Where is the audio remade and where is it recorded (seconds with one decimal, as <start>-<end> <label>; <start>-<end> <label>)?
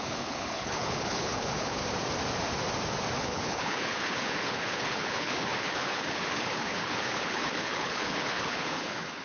0.0-1.8 remade; 1.8-3.2 recorded; 3.2-9.2 remade